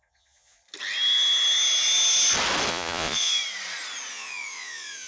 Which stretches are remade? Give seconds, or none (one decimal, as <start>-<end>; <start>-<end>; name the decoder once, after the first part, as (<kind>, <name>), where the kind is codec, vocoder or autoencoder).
0.0-0.6 (vocoder, Vocos); 2.7-3.4; 4.1-5.1